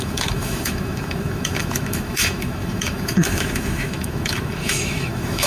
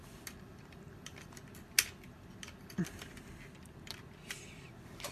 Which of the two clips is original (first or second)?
second